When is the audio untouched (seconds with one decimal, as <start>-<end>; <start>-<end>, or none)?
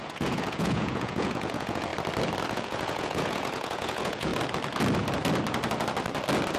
1.9-2.5; 4.3-6.6